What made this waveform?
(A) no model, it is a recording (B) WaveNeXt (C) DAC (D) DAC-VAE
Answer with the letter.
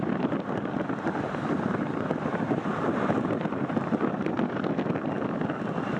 A